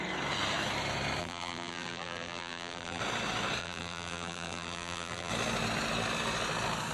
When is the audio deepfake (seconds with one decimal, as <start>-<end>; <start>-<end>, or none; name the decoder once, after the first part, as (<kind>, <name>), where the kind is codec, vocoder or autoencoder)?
1.2-3.0 (vocoder, BigVGAN v2); 3.6-5.3